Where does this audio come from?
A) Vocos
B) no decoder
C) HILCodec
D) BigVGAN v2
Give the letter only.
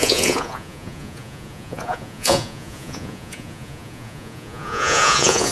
A